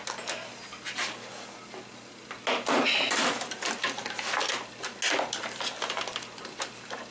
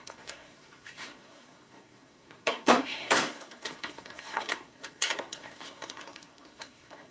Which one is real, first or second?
first